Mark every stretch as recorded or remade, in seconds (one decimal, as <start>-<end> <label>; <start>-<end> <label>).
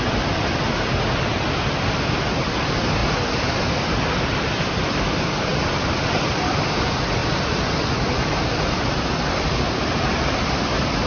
0.0-11.1 remade